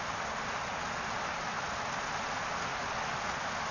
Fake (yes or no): no